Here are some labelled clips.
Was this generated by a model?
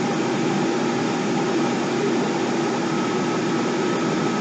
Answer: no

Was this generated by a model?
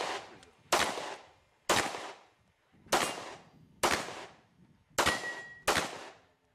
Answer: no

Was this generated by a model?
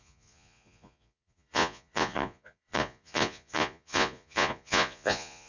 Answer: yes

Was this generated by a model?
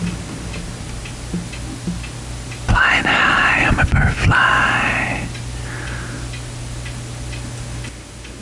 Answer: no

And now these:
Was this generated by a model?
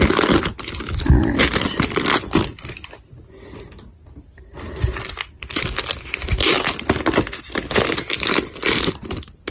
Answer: no